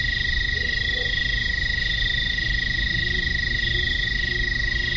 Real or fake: real